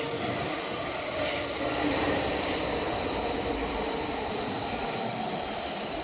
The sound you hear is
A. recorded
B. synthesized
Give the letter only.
B